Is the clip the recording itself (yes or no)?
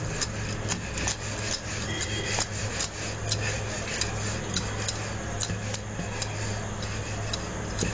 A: yes